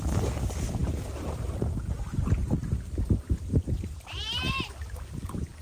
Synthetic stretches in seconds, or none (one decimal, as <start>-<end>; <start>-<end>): none